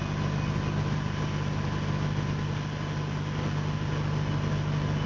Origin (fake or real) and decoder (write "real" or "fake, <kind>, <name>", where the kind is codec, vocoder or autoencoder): real